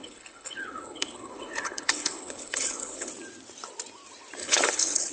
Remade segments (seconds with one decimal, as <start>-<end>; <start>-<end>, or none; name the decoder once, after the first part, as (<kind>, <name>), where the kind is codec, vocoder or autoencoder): 0.0-3.1 (codec, HILCodec); 4.4-5.1